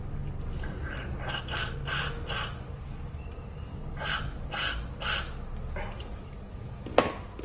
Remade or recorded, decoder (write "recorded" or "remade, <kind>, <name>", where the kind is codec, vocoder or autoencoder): recorded